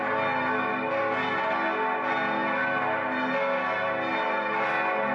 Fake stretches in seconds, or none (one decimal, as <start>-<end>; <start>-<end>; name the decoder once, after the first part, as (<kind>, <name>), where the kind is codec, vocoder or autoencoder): none